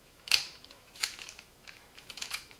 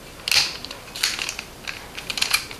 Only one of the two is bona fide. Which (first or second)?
second